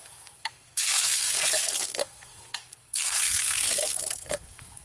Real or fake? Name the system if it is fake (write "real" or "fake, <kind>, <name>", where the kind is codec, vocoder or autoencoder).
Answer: fake, codec, SNAC